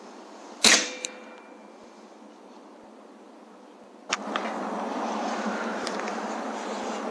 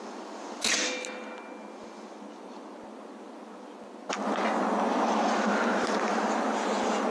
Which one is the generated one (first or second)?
first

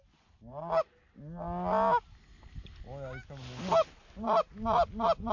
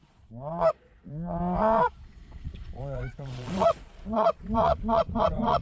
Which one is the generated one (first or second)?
second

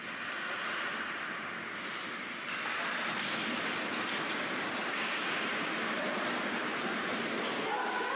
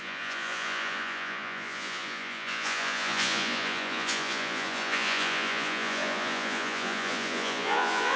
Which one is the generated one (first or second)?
second